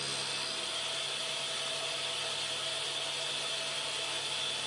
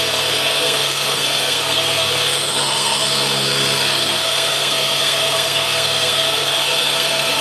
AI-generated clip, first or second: second